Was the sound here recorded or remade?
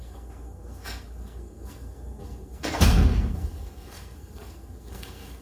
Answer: remade